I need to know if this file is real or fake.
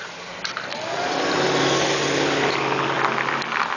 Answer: real